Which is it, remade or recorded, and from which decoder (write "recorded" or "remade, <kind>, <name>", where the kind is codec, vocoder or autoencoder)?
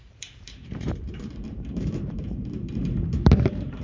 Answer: remade, vocoder, BigVGAN v2